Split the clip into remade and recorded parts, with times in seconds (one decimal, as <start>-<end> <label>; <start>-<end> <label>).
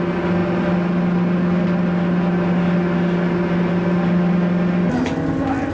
0.0-5.7 recorded